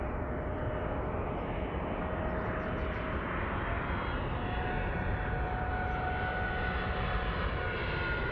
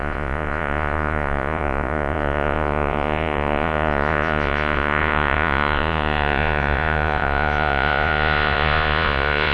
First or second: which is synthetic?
second